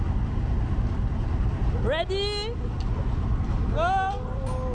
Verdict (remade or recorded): recorded